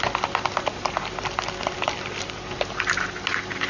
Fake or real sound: real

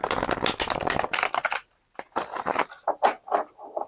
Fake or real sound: real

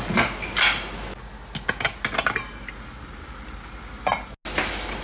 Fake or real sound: real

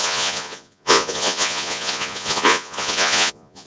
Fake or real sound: fake